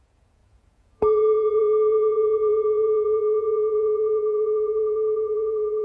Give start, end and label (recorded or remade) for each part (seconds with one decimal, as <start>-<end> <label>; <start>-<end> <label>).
0.0-5.8 remade